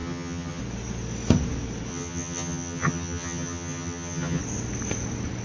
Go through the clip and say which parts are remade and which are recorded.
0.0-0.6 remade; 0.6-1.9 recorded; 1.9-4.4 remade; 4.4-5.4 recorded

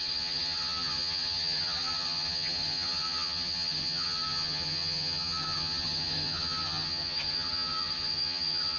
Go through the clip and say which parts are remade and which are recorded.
0.0-8.8 remade

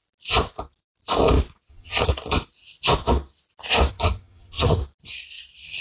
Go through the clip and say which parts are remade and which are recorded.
0.0-1.7 recorded; 1.7-2.1 remade; 2.1-3.9 recorded; 3.9-4.8 remade; 4.8-5.8 recorded

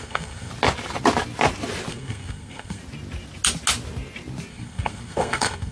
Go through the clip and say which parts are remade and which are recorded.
0.0-0.5 remade; 0.5-1.9 recorded; 1.9-2.8 remade; 2.8-4.5 recorded; 4.5-5.7 remade

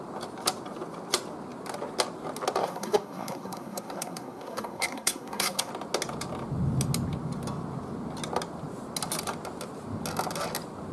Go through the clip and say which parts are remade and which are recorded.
0.0-2.6 recorded; 2.6-5.7 remade; 5.7-10.9 recorded

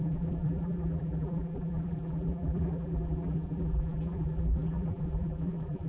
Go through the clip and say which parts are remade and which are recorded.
0.0-5.9 remade

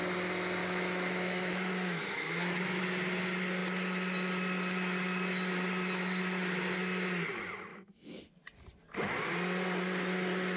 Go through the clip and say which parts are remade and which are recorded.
0.0-0.6 recorded; 0.6-2.8 remade; 2.8-7.7 recorded; 7.7-8.2 remade; 8.2-10.6 recorded

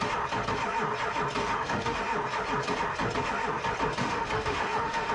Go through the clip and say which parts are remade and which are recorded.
0.0-1.4 recorded; 1.4-2.0 remade; 2.0-4.0 recorded; 4.0-5.1 remade